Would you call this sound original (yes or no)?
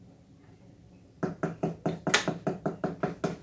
yes